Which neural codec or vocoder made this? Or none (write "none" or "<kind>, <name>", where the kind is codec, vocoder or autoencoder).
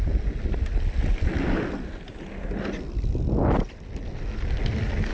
none